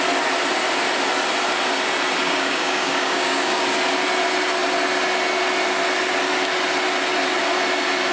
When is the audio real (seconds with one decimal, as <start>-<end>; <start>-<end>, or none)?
0.0-2.2; 3.6-8.1